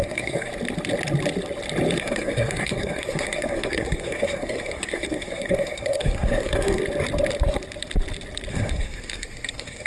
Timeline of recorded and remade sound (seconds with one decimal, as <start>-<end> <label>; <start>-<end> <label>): 0.0-0.5 remade; 0.5-2.0 recorded; 2.0-6.8 remade; 6.8-8.5 recorded; 8.5-9.9 remade

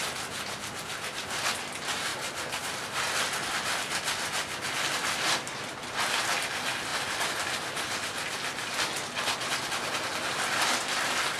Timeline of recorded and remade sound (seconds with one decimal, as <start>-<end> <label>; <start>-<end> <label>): 0.0-2.1 recorded; 2.1-2.6 remade; 2.6-11.4 recorded

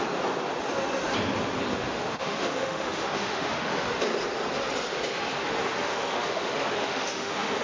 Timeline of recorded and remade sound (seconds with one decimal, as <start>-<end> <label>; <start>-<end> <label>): 0.0-1.7 recorded; 1.7-3.9 remade; 3.9-5.8 recorded; 5.8-7.6 remade

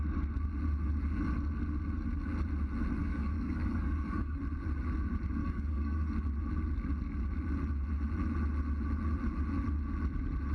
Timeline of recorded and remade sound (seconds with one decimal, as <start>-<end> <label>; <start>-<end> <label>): 0.0-3.0 recorded; 3.0-4.4 remade; 4.4-5.4 recorded; 5.4-6.1 remade; 6.1-10.5 recorded

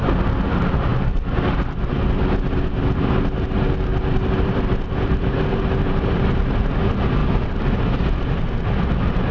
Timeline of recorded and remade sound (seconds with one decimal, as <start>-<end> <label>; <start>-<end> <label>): 0.0-0.9 recorded; 0.9-1.6 remade; 1.6-3.9 recorded; 3.9-6.6 remade; 6.6-9.3 recorded

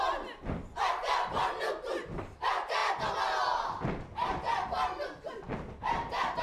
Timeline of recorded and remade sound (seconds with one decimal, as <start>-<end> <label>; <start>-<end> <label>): 0.0-6.4 recorded